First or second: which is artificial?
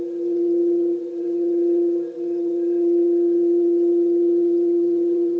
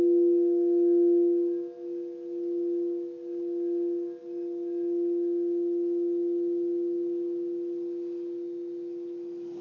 first